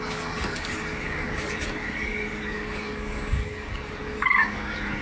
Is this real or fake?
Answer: fake